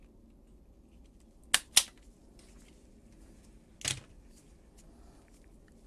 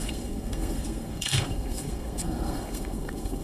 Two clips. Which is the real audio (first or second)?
first